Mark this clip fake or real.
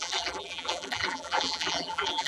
fake